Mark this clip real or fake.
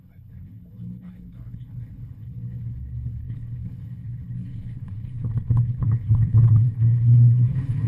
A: fake